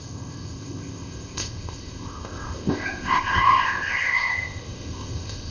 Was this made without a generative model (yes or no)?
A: no